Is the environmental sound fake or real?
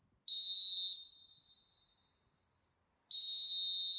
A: real